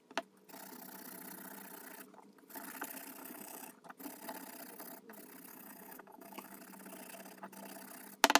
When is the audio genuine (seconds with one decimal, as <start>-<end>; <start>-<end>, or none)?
0.0-3.2; 3.7-5.5; 6.6-8.4

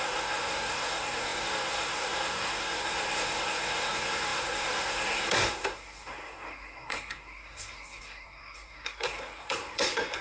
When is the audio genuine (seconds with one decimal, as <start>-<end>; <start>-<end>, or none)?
none